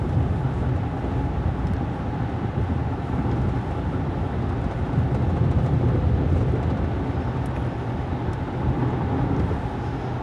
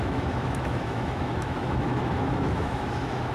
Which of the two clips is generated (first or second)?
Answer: second